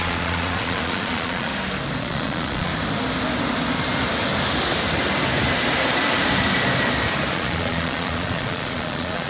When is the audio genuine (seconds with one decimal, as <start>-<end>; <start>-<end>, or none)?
1.5-2.0; 2.7-7.3